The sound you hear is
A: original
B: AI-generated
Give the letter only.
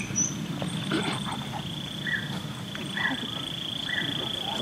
B